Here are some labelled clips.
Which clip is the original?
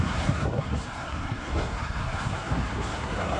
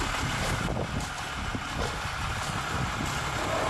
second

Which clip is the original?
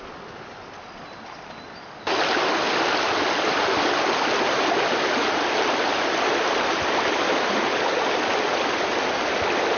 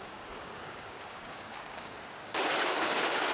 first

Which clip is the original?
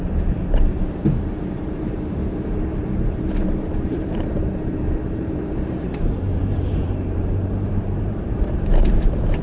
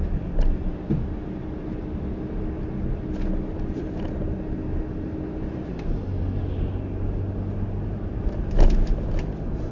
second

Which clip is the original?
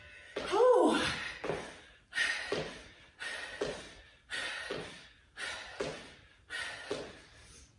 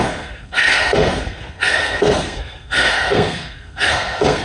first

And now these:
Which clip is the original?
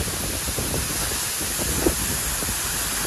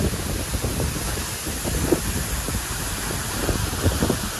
first